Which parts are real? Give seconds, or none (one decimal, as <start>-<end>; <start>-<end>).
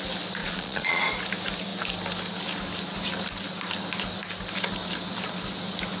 0.0-0.4; 1.0-6.0